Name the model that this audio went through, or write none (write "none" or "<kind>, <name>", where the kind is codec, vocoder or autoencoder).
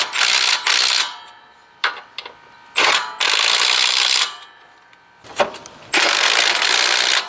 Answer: vocoder, BigVGAN v2